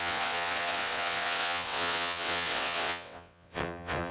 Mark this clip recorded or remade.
remade